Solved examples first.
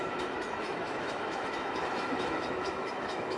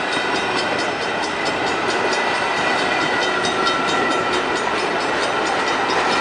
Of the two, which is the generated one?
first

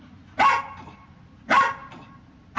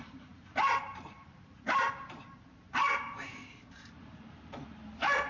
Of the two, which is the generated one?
second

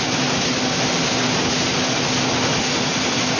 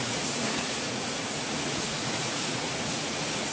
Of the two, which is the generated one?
second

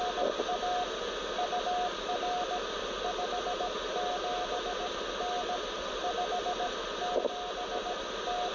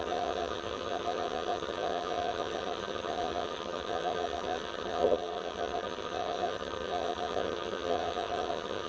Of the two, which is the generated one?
second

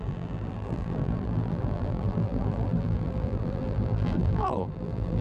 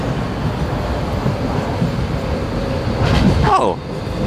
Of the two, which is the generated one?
first